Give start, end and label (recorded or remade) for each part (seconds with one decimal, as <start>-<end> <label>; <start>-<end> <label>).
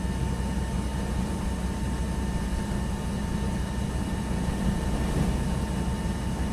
0.0-6.5 recorded